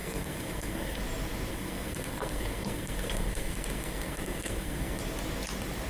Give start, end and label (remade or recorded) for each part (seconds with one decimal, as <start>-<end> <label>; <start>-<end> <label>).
0.0-1.0 remade; 1.0-1.5 recorded; 1.5-5.0 remade; 5.0-5.9 recorded